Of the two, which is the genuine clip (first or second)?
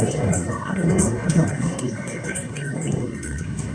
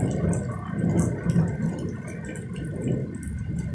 second